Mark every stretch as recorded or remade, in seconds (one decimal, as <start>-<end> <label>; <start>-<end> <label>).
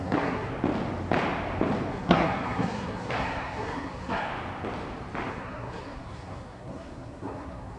0.0-0.5 remade; 0.5-1.9 recorded; 1.9-4.3 remade; 4.3-5.3 recorded; 5.3-7.8 remade